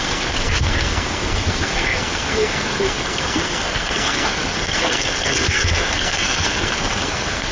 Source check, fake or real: fake